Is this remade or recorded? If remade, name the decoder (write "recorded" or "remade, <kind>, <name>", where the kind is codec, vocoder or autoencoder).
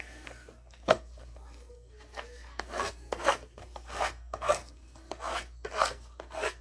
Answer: remade, codec, SNAC